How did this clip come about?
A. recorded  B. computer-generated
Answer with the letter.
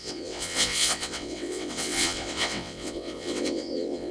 B